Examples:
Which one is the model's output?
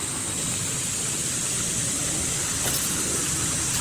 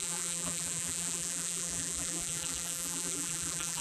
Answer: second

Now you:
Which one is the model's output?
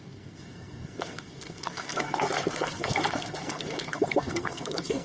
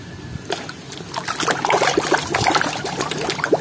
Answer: first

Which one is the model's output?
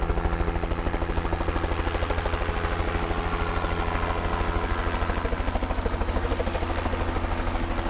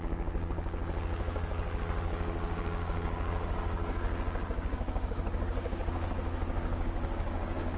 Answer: second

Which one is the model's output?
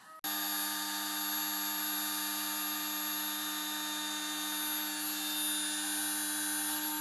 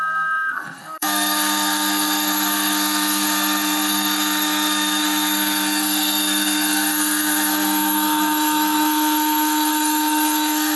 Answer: second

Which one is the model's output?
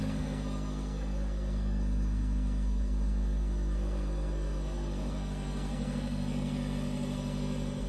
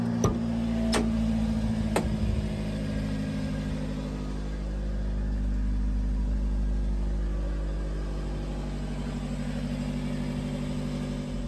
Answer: first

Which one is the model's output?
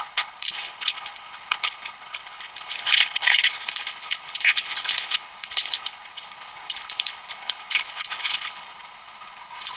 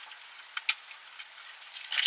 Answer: first